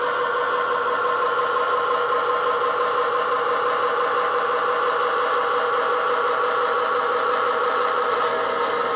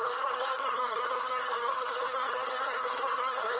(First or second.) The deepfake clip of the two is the second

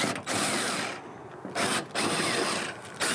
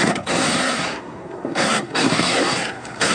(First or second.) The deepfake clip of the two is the second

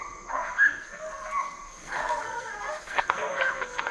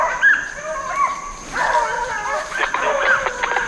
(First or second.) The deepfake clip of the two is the first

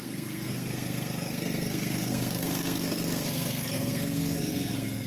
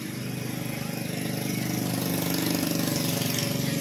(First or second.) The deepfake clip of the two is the first